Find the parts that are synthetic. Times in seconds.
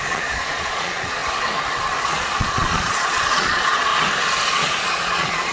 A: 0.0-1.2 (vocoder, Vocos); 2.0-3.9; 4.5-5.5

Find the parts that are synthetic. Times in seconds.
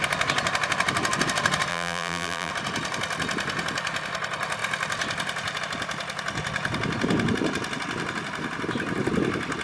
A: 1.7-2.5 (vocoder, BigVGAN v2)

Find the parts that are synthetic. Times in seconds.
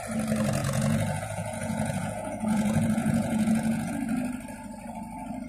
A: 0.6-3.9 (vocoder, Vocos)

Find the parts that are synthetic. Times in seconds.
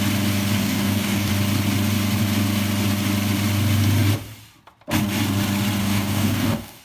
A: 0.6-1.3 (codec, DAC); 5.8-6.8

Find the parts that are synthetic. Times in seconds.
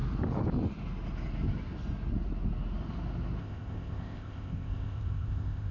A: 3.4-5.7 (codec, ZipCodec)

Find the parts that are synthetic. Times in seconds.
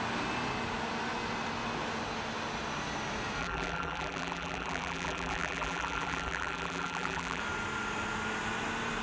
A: 3.4-7.4 (vocoder, BigVGAN v2)